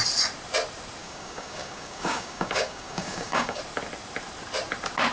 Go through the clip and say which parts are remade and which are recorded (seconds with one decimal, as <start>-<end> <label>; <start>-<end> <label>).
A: 0.0-1.0 recorded; 1.0-3.6 remade; 3.6-5.1 recorded